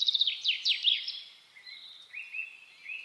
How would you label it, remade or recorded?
recorded